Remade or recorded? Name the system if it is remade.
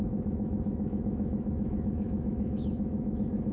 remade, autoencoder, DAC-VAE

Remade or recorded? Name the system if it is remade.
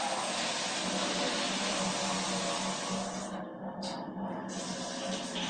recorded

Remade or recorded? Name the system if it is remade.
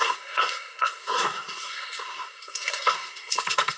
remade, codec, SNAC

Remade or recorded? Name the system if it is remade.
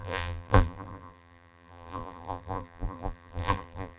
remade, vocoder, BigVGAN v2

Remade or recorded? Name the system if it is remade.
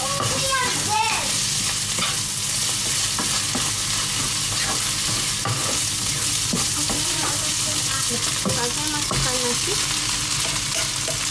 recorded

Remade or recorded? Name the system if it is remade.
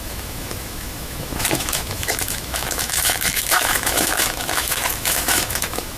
remade, autoencoder, DAC-VAE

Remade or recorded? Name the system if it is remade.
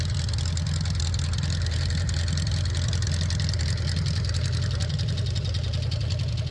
recorded